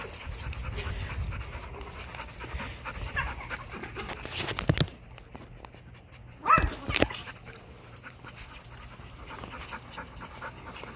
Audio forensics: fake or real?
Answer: real